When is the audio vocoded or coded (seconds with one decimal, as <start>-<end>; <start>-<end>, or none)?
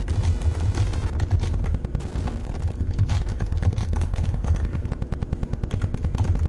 2.4-4.9